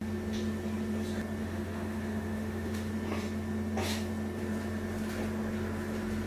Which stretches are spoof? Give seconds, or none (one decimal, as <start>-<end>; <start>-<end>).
1.4-2.9